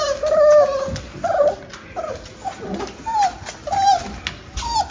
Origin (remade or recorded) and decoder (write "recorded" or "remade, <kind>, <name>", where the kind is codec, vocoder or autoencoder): recorded